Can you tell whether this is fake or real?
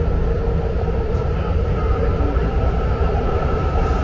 real